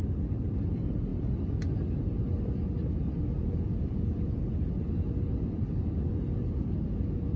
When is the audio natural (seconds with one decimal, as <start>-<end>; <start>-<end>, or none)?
0.0-3.4; 4.4-7.4